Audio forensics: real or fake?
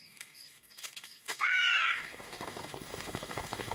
fake